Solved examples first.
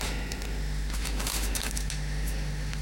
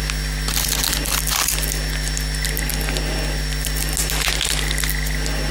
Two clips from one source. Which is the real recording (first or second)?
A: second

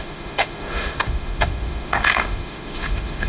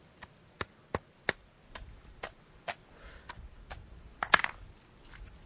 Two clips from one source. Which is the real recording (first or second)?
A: second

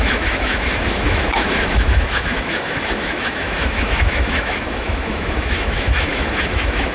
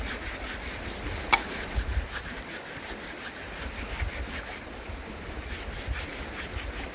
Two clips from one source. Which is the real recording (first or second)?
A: second